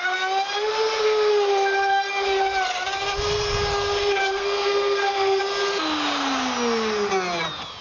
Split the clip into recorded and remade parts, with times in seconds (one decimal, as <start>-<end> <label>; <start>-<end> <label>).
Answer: 0.0-4.2 recorded; 4.2-5.4 remade; 5.4-7.8 recorded